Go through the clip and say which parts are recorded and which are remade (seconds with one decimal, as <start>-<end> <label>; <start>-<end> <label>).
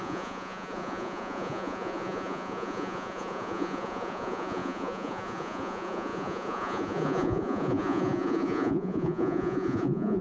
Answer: 0.0-10.2 remade